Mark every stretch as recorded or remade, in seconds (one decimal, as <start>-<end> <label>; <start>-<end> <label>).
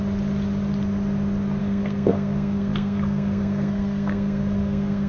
0.0-1.6 recorded; 1.6-5.1 remade